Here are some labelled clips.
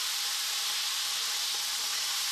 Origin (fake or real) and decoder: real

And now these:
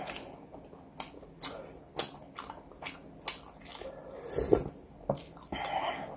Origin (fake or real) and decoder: real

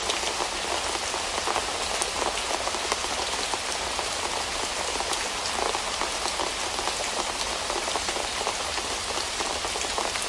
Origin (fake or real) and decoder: real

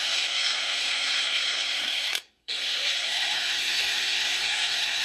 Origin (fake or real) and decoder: fake, codec, SNAC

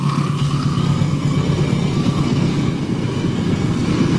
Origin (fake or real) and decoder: fake, codec, SNAC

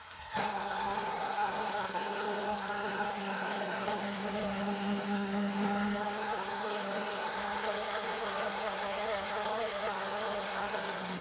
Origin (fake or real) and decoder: fake, codec, SNAC